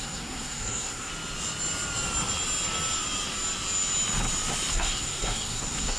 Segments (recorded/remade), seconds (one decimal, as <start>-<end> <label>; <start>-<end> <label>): 0.0-1.1 remade; 1.1-4.7 recorded; 4.7-6.0 remade